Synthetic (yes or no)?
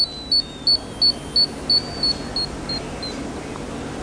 no